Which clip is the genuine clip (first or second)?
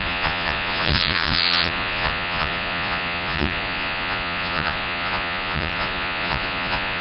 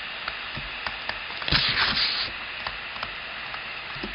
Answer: second